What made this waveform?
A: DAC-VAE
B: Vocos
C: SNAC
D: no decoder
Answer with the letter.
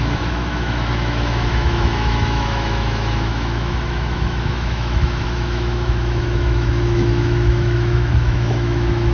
A